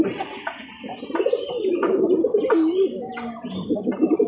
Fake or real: fake